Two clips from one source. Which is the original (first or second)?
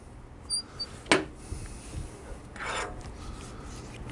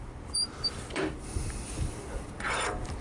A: first